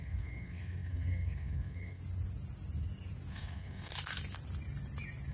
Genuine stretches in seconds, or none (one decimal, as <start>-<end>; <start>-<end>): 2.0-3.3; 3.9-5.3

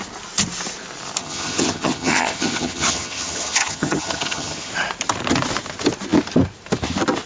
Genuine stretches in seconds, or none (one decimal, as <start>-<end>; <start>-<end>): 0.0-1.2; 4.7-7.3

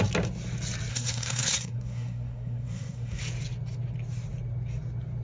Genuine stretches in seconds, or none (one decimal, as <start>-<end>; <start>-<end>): 0.0-0.9; 3.2-5.2

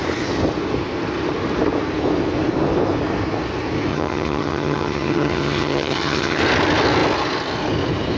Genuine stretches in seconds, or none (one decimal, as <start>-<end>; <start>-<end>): 0.0-3.9; 6.4-8.2